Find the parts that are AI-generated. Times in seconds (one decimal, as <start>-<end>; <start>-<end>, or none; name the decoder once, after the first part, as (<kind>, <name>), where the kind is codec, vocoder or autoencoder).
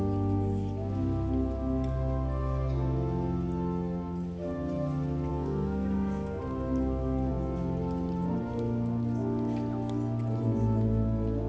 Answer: 5.3-6.4 (codec, SNAC)